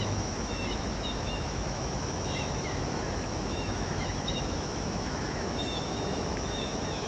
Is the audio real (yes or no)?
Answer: no